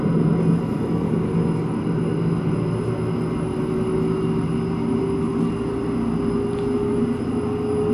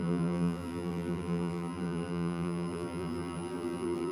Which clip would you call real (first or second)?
first